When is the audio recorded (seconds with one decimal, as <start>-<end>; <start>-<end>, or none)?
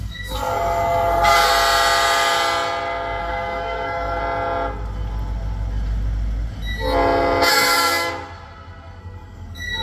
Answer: 1.5-3.2; 4.2-7.5; 8.1-9.0